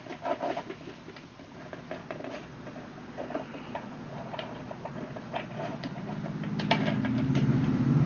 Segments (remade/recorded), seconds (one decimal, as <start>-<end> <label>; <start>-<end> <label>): 0.0-2.0 recorded; 2.0-6.1 remade; 6.1-8.1 recorded

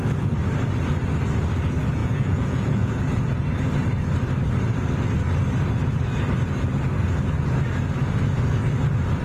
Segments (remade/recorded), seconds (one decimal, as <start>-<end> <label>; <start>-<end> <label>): 0.0-2.0 recorded; 2.0-3.0 remade; 3.0-9.2 recorded

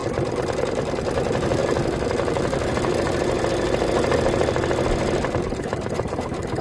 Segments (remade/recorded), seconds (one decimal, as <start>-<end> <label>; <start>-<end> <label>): 0.0-0.6 recorded; 0.6-1.6 remade; 1.6-5.3 recorded; 5.3-6.6 remade